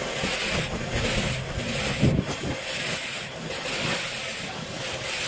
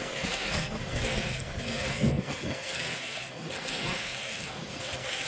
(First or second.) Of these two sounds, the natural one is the first